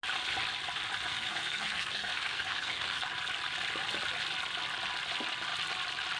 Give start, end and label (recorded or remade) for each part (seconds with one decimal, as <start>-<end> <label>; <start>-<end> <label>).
0.0-1.1 recorded; 1.1-3.1 remade; 3.1-6.2 recorded